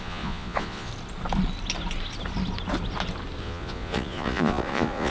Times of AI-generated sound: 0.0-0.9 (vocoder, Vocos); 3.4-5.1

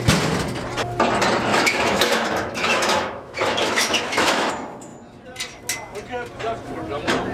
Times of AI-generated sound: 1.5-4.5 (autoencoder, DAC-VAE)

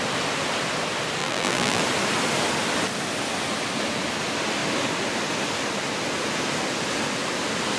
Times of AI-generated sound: 1.2-1.8 (vocoder, BigVGAN v2)